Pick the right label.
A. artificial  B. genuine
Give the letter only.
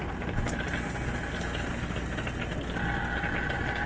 B